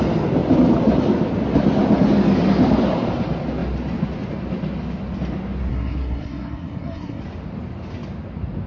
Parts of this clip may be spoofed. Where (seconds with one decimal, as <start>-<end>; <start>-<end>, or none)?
5.7-7.2

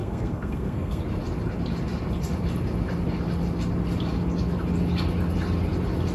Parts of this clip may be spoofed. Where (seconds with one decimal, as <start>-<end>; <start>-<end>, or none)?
0.0-1.0

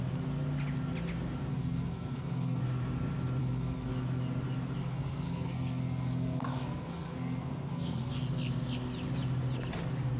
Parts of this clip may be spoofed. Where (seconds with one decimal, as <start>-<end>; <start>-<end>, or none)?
1.5-2.6; 3.4-3.9; 4.8-8.1

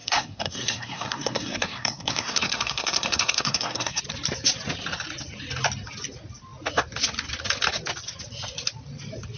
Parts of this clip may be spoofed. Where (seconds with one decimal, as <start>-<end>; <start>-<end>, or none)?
0.0-4.0